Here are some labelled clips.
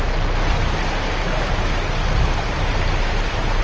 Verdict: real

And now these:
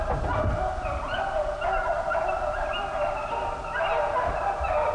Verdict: real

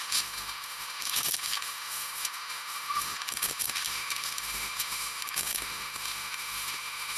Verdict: fake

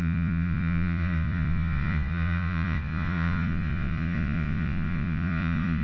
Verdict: fake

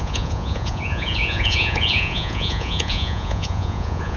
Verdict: fake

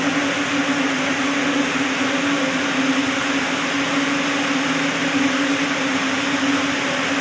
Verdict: real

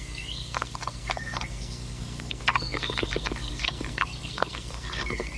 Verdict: fake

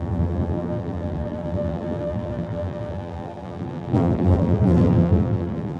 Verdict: fake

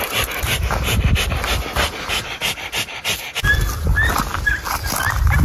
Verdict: real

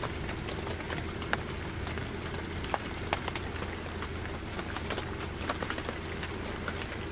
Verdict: real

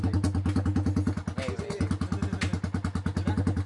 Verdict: real